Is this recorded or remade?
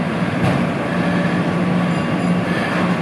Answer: recorded